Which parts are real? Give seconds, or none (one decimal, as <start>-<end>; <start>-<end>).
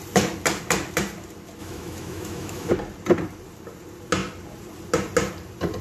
0.0-1.6; 2.7-5.8